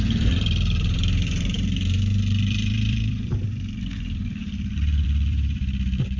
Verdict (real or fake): fake